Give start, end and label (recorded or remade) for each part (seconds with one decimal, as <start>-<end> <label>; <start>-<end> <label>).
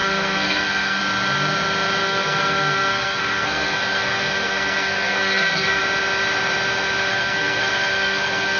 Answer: 0.0-1.0 remade; 1.0-2.0 recorded; 2.0-5.8 remade; 5.8-7.1 recorded; 7.1-8.6 remade